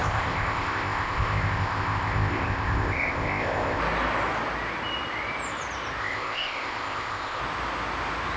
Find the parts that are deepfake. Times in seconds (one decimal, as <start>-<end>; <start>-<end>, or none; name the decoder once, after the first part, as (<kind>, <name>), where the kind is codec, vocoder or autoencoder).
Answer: 0.0-3.8 (codec, ZipCodec); 6.0-7.4